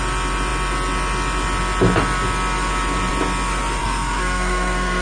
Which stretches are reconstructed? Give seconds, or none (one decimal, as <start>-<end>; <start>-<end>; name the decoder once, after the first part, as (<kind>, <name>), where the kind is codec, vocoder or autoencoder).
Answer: 3.8-5.0 (codec, SNAC)